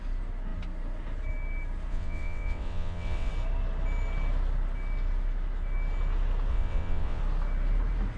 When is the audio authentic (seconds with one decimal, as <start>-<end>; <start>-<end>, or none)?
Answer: 0.0-1.9; 3.3-6.5; 7.2-8.2